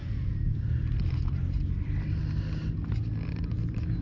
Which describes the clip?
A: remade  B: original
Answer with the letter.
B